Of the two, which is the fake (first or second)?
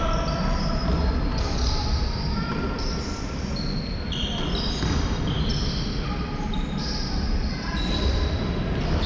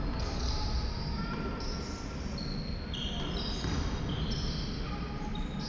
first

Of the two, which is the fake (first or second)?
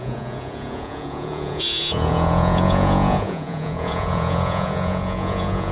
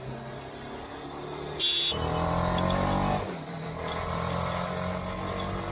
first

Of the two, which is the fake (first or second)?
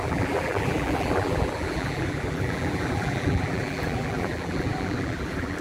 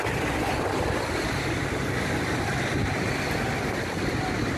first